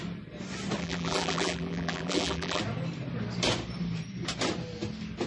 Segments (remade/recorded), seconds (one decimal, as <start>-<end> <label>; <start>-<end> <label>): 0.0-0.8 recorded; 0.8-2.6 remade; 2.6-5.3 recorded